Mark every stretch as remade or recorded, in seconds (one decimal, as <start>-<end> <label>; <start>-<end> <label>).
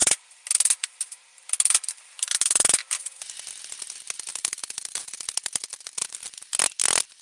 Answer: 0.0-3.2 remade; 3.2-4.3 recorded; 4.3-5.0 remade; 5.0-7.2 recorded